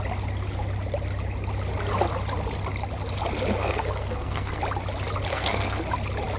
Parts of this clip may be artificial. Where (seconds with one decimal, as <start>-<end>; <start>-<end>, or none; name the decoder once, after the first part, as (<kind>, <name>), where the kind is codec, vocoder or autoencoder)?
3.6-4.6 (codec, SNAC); 5.3-5.8